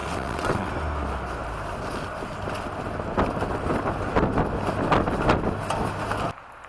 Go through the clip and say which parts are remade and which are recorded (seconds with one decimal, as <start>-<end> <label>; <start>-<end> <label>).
0.0-0.7 remade; 0.7-6.7 recorded